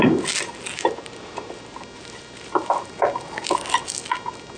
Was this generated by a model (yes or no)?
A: no